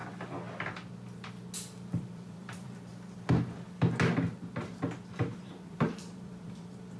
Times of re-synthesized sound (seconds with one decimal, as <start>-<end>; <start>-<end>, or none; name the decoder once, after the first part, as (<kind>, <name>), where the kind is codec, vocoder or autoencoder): 2.0-2.9 (vocoder, BigVGAN v2); 5.3-7.0